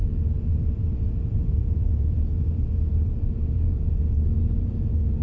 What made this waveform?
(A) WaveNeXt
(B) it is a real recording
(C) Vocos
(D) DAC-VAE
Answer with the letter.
C